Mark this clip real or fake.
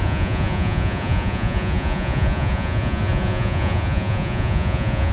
fake